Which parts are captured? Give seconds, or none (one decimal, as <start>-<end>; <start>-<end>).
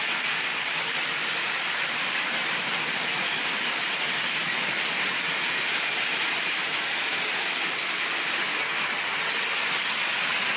0.0-1.2; 5.4-10.6